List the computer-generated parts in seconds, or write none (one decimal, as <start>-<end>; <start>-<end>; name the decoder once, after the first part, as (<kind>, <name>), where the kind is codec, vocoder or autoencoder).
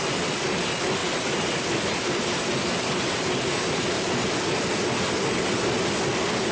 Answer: none